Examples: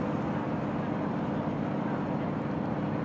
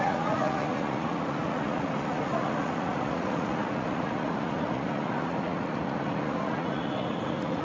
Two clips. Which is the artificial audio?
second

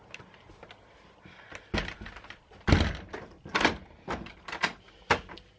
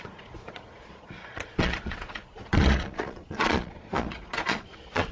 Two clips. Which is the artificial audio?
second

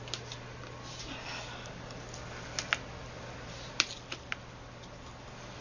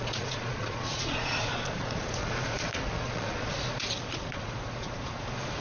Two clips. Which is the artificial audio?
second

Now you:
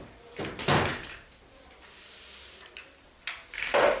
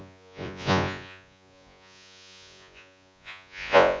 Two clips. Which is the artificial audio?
second